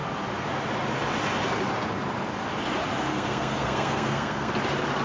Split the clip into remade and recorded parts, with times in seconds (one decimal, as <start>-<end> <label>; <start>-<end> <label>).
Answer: 0.0-3.1 recorded; 3.1-4.5 remade; 4.5-5.0 recorded